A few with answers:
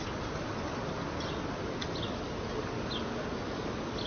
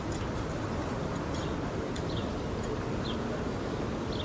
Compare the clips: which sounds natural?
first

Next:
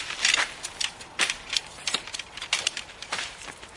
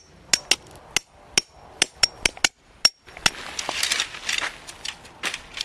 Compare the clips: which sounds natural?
second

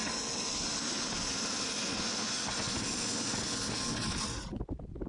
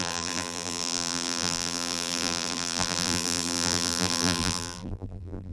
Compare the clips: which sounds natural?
first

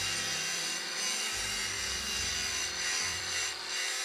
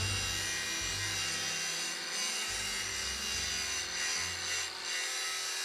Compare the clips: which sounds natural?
second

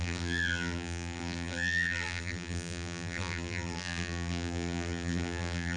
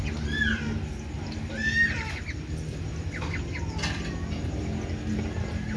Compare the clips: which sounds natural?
second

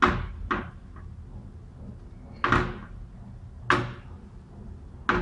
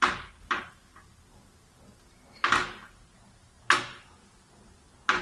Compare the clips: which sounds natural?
first